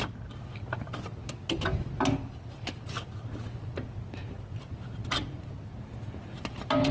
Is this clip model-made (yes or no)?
no